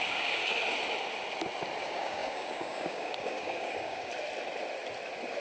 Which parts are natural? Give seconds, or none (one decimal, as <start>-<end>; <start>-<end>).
0.4-1.8; 4.1-5.4